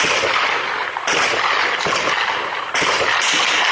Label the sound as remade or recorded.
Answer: recorded